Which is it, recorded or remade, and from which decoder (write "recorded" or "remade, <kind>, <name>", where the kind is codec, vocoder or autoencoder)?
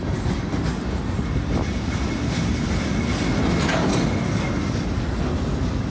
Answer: recorded